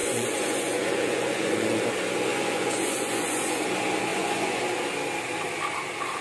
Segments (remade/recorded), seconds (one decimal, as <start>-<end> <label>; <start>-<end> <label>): 0.0-1.8 remade; 1.8-2.3 recorded; 2.3-3.6 remade; 3.6-4.1 recorded; 4.1-4.6 remade; 4.6-6.2 recorded